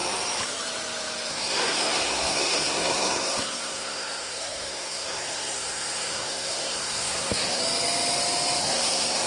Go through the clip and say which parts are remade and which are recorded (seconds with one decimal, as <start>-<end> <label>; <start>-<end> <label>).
0.0-1.3 recorded; 1.3-7.6 remade; 7.6-8.6 recorded; 8.6-9.3 remade